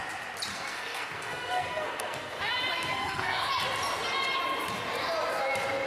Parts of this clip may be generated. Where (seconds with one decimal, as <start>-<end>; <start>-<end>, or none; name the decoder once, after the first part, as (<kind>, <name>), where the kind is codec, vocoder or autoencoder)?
0.5-2.4 (codec, SNAC); 2.9-3.5